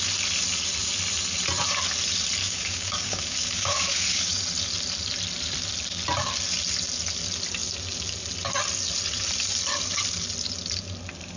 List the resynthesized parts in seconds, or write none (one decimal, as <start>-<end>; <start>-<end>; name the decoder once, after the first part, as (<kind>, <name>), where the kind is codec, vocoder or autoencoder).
2.4-4.3 (codec, DAC)